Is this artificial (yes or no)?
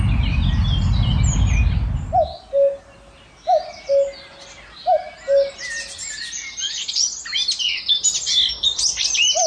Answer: no